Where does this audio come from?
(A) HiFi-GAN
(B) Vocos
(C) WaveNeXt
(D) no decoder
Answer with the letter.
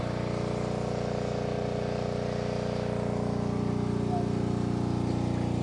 D